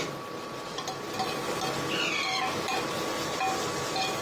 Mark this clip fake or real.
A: real